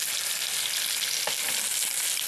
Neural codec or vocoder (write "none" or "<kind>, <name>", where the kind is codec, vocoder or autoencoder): none